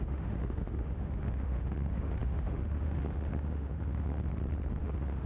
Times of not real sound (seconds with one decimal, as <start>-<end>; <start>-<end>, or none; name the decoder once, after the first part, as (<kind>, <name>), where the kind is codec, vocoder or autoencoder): 0.0-4.3 (autoencoder, DAC-VAE); 4.8-5.3